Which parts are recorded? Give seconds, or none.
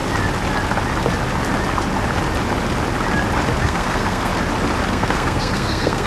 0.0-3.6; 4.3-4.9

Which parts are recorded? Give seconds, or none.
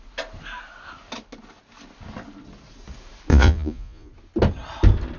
0.0-3.3; 4.1-5.2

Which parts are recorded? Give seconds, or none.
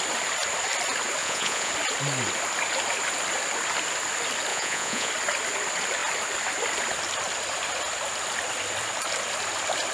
0.0-1.2; 1.7-4.5; 5.1-9.9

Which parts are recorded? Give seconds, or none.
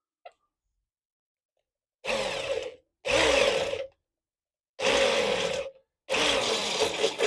0.0-6.6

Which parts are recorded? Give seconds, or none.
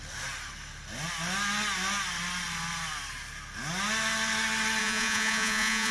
0.0-4.8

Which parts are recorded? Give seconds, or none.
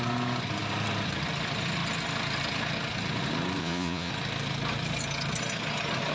0.0-3.6; 4.1-6.1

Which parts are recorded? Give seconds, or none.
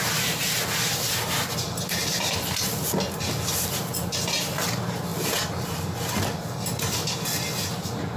0.0-8.2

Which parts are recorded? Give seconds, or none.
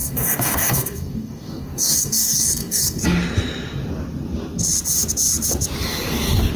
3.0-6.6